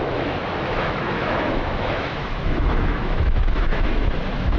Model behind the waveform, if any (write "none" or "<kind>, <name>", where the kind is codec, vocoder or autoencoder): autoencoder, DAC-VAE